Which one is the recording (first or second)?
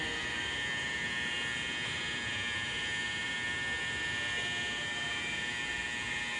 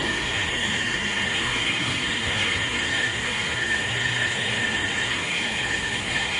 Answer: first